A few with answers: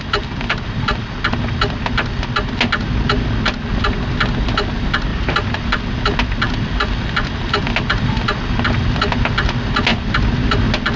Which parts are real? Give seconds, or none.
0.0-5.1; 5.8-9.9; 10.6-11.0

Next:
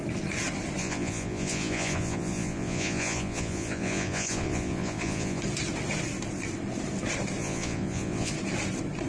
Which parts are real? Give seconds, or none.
0.0-0.8; 5.4-7.4; 8.3-9.1